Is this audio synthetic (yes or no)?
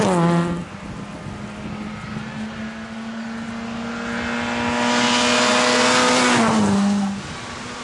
no